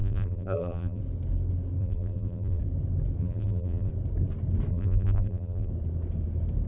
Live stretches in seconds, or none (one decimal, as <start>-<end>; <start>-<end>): 1.0-1.8; 2.6-3.2; 3.9-4.7; 5.7-6.7